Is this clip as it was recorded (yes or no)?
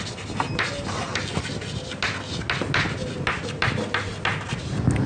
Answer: yes